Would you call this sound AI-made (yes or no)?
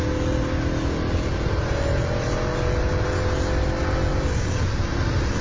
no